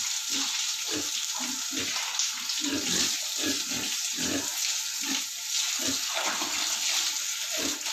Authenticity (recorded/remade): recorded